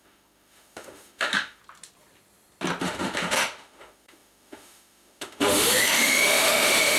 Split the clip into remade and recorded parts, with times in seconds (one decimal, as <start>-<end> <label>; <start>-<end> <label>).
0.0-1.6 remade; 1.6-2.8 recorded; 2.8-7.0 remade